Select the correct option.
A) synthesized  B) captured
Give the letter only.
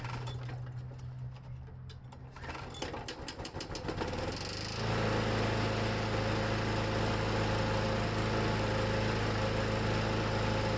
B